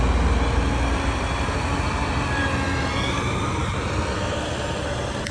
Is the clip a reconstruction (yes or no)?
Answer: no